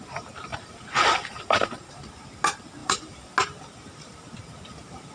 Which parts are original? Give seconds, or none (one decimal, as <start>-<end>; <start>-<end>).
0.0-0.5; 2.0-2.8; 3.3-5.1